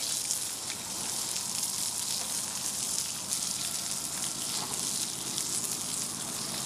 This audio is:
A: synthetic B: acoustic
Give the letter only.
B